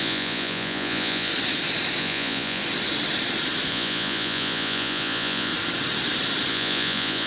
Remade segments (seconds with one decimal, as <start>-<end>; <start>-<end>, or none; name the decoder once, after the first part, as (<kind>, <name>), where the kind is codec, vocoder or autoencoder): 0.0-1.3 (vocoder, Vocos); 2.0-2.6; 3.7-5.5; 6.5-7.3